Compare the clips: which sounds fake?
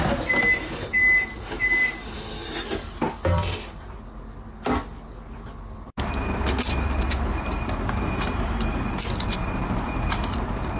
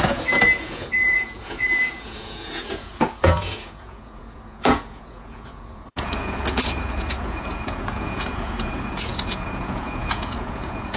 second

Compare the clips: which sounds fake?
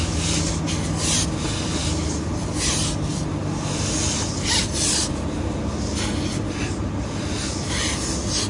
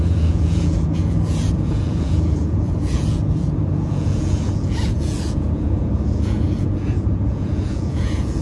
second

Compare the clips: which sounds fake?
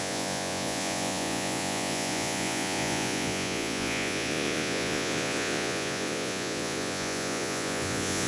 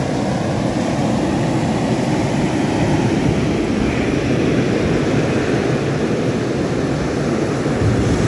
first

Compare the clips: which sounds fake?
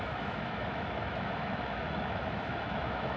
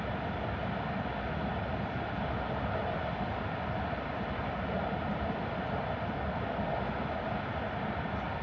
first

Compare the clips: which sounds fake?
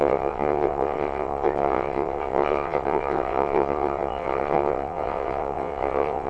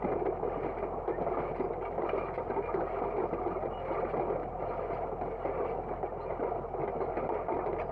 first